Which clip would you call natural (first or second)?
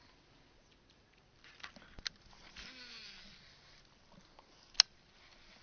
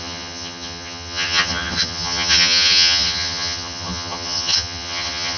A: first